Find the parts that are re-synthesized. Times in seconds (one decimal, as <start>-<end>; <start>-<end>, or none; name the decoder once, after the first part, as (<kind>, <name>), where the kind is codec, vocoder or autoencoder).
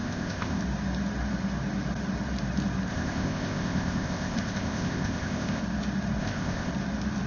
0.0-0.6 (codec, ZipCodec); 2.9-5.6; 6.2-6.7